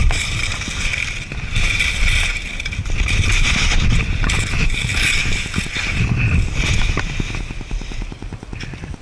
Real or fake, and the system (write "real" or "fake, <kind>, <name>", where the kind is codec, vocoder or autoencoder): real